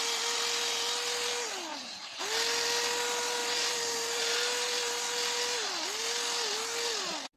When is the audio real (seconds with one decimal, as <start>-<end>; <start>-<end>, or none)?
0.0-1.7; 2.2-3.4; 4.9-7.4